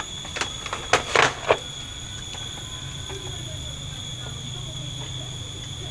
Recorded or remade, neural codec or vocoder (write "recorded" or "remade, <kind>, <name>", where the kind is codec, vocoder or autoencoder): recorded